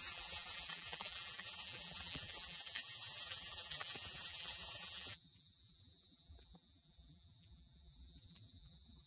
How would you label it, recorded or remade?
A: remade